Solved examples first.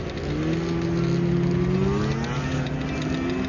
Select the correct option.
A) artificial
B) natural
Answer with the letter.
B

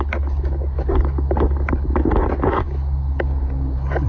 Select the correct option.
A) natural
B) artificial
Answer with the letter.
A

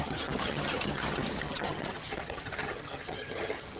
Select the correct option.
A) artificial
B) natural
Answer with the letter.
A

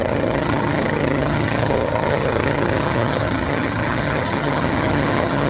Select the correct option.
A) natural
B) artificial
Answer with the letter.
B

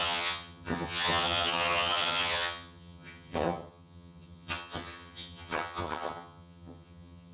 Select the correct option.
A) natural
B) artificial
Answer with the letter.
B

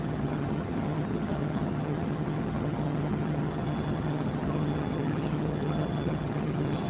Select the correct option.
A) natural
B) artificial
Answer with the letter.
B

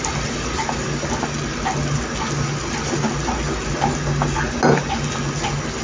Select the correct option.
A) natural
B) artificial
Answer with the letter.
A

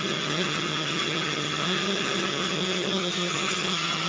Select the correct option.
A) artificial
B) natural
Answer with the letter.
A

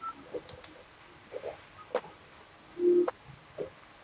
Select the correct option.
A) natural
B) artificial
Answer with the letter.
A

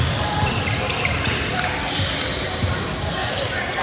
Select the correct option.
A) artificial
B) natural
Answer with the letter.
B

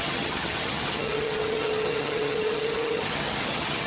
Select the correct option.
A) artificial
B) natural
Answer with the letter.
A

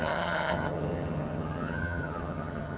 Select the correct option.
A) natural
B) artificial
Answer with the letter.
B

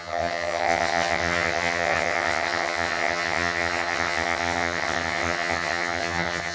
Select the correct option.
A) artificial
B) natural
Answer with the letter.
A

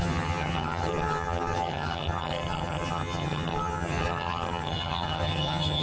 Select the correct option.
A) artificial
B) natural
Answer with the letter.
A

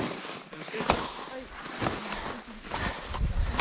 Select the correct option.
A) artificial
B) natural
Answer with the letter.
B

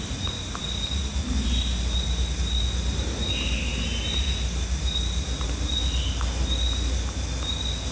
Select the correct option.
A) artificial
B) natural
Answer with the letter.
B